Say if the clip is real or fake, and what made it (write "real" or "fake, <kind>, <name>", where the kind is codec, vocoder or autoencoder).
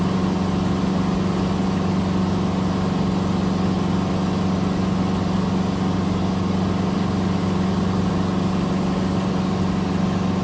real